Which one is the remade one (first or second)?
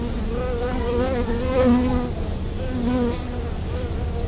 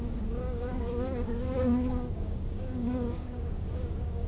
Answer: second